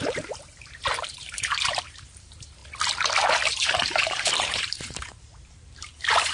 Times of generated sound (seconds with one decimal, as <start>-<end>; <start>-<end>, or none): 0.0-2.6; 3.5-6.3